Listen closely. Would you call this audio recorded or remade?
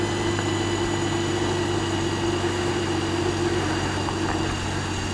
recorded